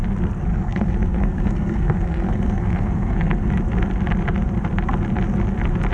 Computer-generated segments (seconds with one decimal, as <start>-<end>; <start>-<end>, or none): 0.5-3.5